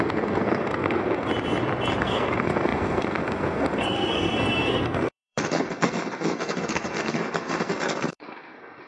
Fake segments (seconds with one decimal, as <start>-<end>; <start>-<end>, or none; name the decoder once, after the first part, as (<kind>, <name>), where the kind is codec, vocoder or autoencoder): 0.0-1.3 (codec, SNAC); 2.0-8.9